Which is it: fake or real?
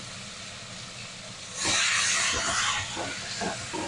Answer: real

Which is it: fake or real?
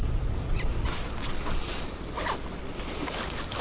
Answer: real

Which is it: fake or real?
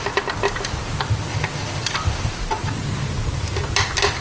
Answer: real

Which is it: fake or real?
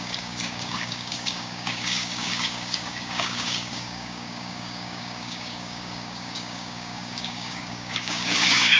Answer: fake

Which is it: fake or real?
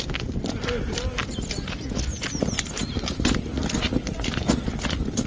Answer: real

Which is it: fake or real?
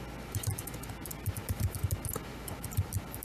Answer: real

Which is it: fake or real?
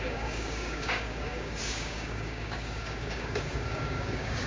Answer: fake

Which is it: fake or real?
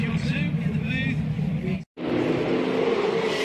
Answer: real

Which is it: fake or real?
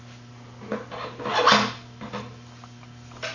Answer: real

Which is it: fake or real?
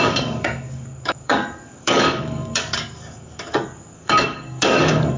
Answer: fake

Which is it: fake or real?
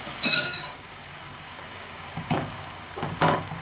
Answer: fake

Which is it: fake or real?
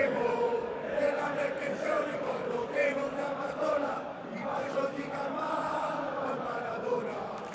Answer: fake